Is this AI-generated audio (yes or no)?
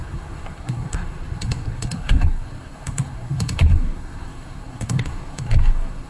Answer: yes